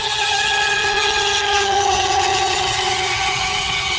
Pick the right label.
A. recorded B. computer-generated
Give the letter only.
B